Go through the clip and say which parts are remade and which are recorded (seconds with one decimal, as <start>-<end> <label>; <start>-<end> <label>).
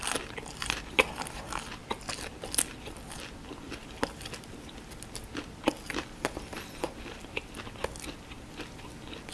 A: 0.0-9.3 recorded